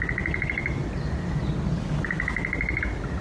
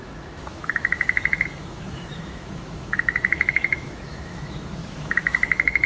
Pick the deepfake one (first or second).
second